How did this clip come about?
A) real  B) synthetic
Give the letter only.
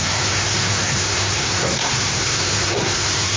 B